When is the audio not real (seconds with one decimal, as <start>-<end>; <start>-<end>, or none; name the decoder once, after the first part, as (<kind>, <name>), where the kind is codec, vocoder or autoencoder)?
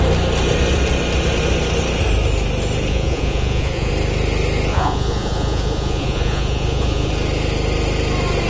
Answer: 2.9-3.9 (vocoder, Vocos); 4.7-7.1